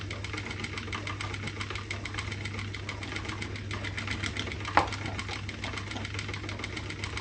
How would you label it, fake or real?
real